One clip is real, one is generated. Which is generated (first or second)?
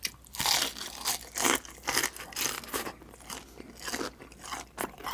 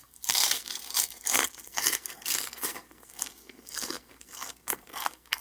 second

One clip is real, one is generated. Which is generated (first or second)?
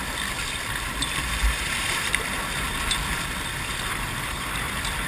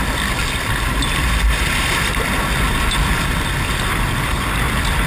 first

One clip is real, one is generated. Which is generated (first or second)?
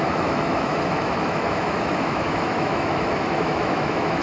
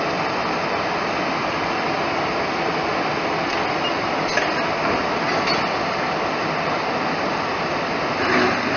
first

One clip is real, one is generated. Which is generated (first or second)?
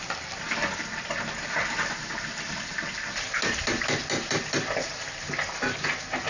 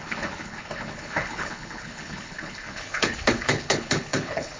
second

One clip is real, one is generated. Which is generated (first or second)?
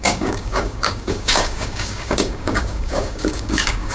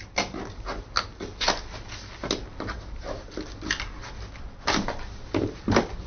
first